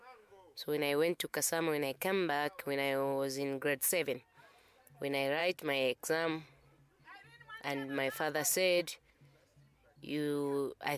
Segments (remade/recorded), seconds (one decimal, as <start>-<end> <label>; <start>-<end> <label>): 0.0-3.9 remade; 3.9-11.0 recorded